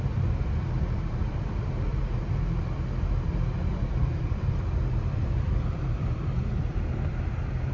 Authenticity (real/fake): fake